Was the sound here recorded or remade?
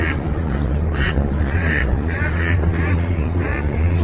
remade